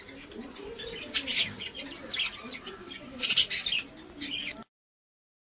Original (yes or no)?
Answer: yes